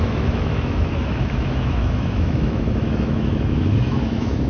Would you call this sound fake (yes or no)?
yes